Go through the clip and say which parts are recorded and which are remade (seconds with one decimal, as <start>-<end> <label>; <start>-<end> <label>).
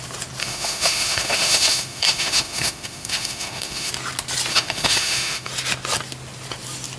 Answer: 0.0-0.4 recorded; 0.4-3.9 remade; 3.9-4.5 recorded; 4.5-5.5 remade; 5.5-7.0 recorded